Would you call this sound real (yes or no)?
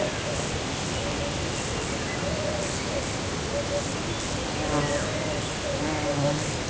yes